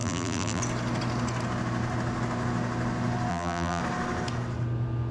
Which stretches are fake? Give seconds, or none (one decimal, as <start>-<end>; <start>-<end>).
0.0-0.6; 3.3-3.8